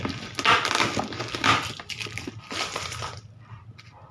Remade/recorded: recorded